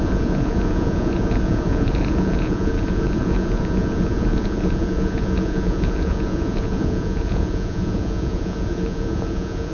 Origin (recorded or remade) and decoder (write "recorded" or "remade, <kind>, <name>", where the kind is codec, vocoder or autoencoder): remade, vocoder, Vocos